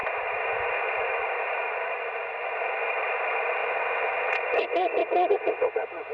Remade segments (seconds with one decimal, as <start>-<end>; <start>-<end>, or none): 3.6-4.4; 5.0-6.1

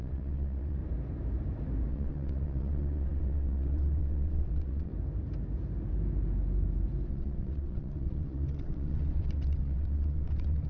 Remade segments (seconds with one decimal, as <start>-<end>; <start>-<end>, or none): 0.0-0.8; 1.9-4.9; 7.1-10.7

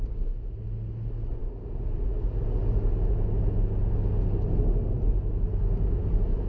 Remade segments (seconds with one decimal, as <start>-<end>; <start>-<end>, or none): none

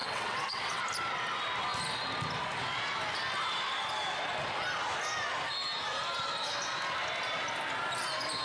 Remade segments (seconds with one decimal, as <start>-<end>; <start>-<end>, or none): 0.0-0.8

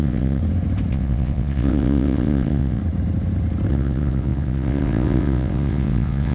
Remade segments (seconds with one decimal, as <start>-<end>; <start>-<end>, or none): 0.0-0.4; 0.9-2.8; 3.7-6.3

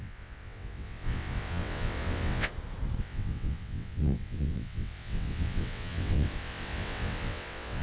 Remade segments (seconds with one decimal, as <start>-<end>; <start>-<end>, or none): 0.0-2.5; 3.0-7.8

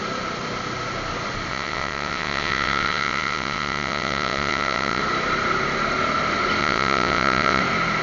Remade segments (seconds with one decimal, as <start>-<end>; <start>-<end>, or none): 1.5-5.0; 6.6-7.6

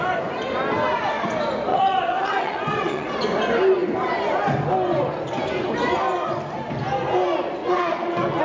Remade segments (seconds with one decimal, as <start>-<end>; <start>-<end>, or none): 1.7-3.1; 7.6-8.4